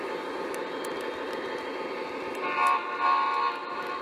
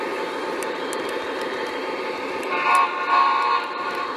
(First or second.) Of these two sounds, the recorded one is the first